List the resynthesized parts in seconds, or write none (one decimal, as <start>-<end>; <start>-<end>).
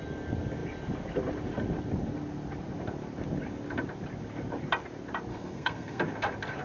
5.3-6.0